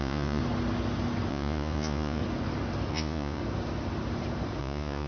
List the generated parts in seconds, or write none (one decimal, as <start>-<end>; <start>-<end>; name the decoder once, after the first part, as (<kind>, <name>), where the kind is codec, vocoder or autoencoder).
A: 0.0-0.4 (vocoder, Vocos); 1.3-2.2; 2.9-3.4; 4.6-5.1